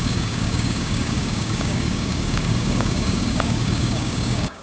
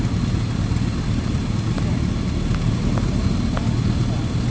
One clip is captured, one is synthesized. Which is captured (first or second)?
second